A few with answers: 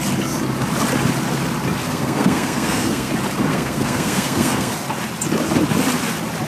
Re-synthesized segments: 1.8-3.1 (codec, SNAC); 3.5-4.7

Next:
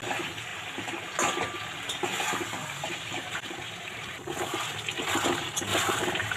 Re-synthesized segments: 2.6-4.2 (vocoder, BigVGAN v2); 5.7-6.4

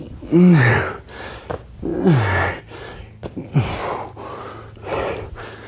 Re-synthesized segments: 0.9-1.9 (vocoder, BigVGAN v2); 2.6-5.7

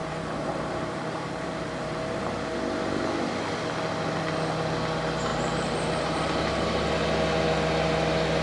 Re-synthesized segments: 0.0-2.2 (vocoder, BigVGAN v2); 5.3-6.9

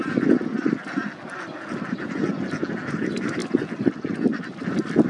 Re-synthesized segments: none

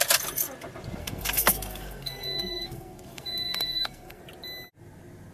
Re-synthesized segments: 1.0-4.2 (codec, SNAC)